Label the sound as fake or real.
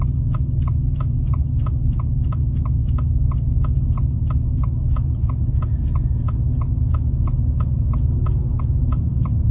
real